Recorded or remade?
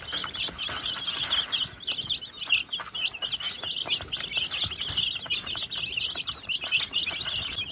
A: recorded